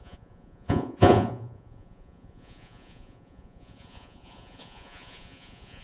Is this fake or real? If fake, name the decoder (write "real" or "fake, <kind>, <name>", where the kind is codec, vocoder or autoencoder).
fake, vocoder, Vocos